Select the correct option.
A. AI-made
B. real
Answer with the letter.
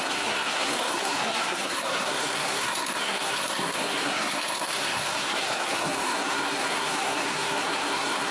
A